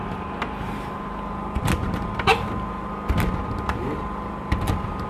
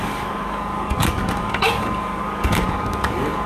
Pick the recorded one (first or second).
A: first